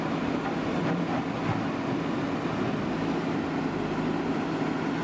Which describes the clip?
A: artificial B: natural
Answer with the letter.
B